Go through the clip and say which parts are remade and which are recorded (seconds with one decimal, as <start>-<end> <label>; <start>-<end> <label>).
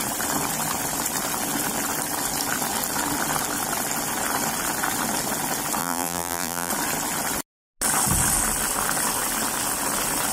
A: 0.0-5.8 recorded; 5.8-6.7 remade; 6.7-10.3 recorded